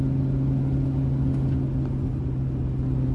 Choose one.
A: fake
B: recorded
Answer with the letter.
B